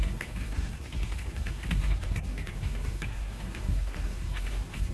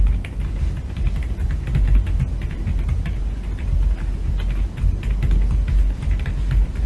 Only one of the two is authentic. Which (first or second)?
second